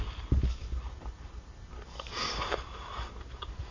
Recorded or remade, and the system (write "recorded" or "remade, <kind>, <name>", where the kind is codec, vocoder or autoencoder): recorded